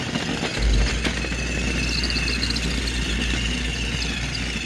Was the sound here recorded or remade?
recorded